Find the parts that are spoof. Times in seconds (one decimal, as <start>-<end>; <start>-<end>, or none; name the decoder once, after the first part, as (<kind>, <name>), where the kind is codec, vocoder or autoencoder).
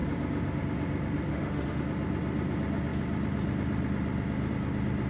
1.3-1.8 (autoencoder, DAC-VAE)